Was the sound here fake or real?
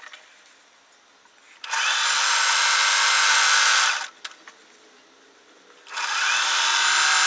real